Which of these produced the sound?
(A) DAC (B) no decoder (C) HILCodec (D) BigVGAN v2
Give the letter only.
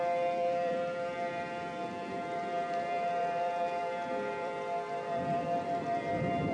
D